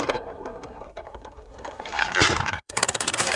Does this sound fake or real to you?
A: fake